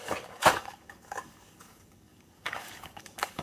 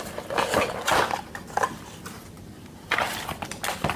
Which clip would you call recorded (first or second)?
second